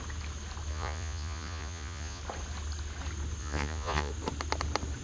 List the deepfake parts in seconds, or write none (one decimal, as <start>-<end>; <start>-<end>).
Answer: 0.7-2.2; 3.4-4.1